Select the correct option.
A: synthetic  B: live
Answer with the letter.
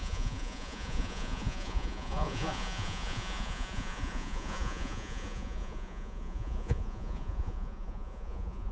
A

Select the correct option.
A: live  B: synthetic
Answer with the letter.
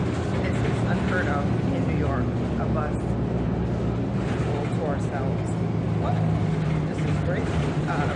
A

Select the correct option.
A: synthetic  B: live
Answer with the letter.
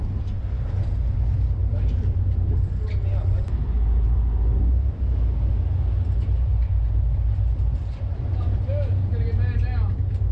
B